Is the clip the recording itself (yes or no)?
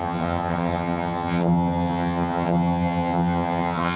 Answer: no